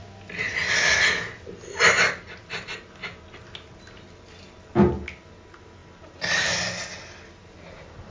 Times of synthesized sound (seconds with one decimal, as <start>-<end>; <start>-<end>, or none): none